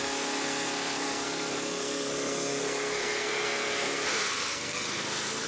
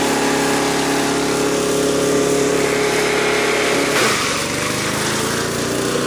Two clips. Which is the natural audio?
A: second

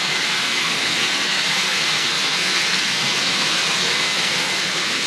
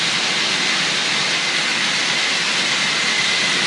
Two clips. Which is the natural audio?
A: second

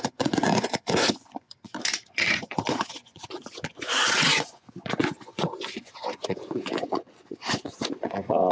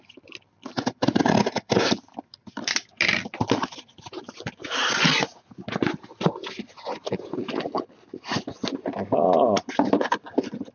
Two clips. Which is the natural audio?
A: second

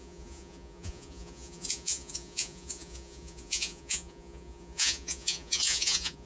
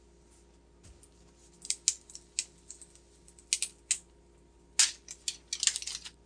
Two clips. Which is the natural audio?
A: second